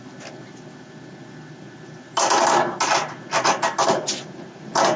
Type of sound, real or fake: real